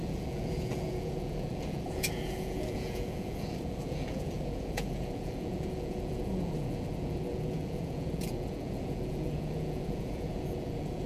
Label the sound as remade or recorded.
remade